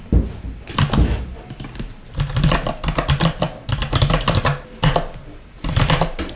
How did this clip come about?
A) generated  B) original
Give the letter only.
B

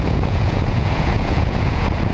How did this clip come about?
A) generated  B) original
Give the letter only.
A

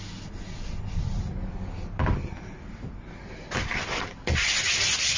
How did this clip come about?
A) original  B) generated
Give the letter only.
A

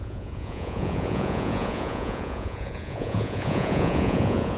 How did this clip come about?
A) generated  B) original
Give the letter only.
A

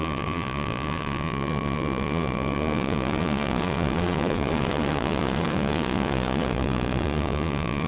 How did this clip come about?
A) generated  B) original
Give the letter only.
A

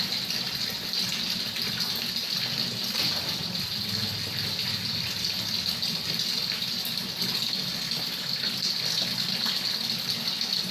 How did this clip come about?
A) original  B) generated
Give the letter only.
A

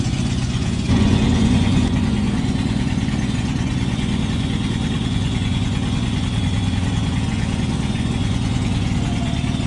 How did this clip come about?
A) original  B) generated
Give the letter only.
B